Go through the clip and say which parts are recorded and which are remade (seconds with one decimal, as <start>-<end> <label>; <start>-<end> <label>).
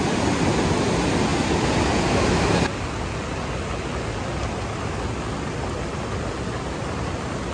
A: 0.0-7.5 recorded